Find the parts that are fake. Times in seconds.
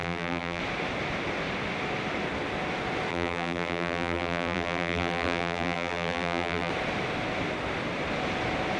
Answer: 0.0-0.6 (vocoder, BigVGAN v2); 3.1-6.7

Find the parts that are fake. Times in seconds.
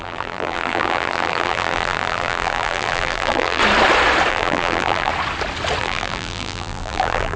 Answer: 0.0-3.6 (vocoder, BigVGAN v2); 4.3-5.1; 5.8-7.4